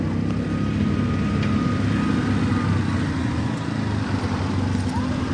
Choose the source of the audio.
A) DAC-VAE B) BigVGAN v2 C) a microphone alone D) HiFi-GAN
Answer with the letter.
C